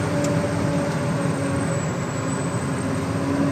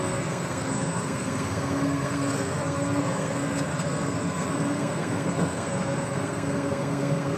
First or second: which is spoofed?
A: second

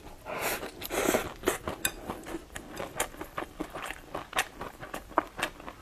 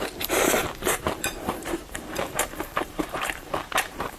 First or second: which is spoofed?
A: second